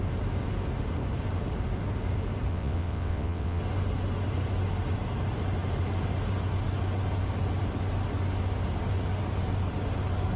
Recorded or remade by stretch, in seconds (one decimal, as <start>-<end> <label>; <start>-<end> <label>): 0.0-2.5 recorded; 2.5-3.6 remade; 3.6-10.4 recorded